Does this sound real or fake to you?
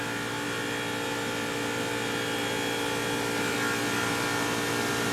real